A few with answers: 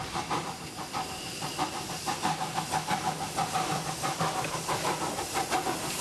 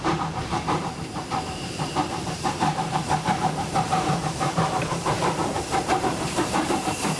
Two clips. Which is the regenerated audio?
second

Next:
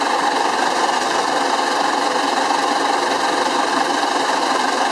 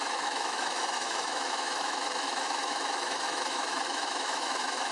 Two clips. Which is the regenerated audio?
second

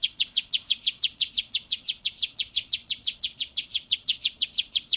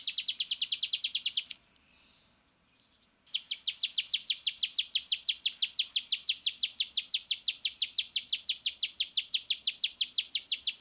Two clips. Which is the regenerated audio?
first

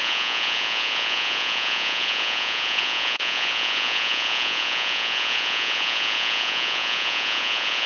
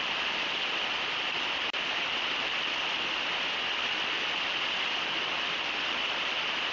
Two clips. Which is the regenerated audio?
first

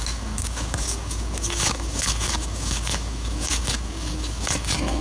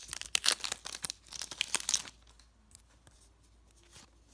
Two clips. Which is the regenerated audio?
first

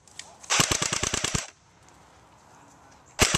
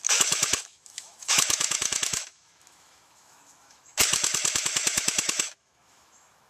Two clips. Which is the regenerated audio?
second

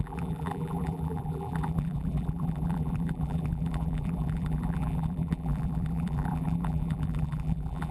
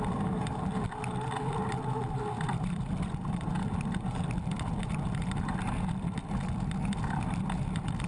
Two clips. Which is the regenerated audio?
first